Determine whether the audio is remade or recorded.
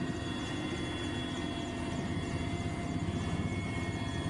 recorded